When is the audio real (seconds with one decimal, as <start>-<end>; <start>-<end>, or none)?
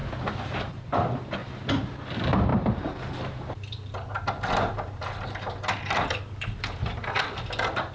0.0-0.7